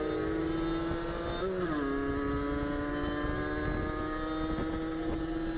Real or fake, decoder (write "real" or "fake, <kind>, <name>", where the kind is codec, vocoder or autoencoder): real